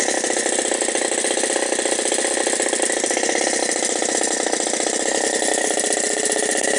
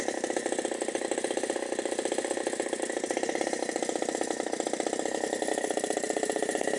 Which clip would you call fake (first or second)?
second